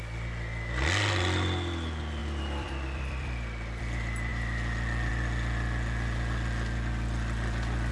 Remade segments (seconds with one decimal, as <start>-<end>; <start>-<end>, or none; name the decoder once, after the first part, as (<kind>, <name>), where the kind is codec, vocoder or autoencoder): 2.2-3.8 (vocoder, BigVGAN v2)